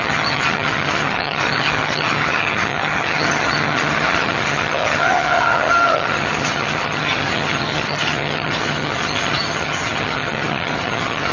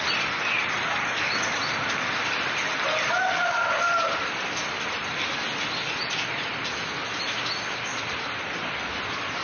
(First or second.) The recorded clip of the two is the second